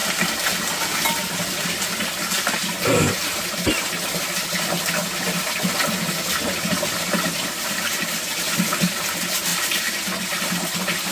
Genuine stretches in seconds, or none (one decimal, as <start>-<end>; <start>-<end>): 0.6-9.5; 10.2-11.1